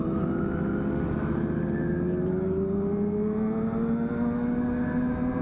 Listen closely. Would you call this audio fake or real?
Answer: real